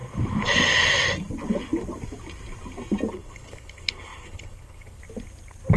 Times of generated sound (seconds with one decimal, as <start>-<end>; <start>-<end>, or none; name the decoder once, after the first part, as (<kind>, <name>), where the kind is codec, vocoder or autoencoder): 3.1-5.0 (codec, HILCodec)